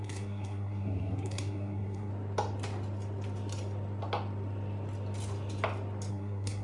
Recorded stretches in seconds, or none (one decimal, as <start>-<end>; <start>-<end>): 2.1-6.1